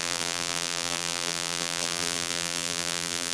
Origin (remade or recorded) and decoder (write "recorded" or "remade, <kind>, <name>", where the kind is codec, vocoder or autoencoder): remade, vocoder, BigVGAN v2